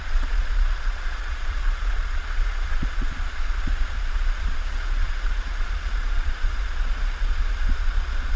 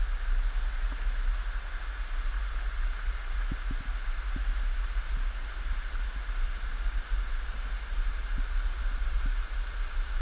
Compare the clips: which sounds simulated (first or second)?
first